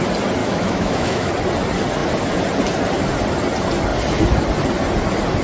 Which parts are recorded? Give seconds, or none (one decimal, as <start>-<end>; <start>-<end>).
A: 0.0-0.4; 1.3-5.4